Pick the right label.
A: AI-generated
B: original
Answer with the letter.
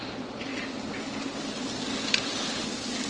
B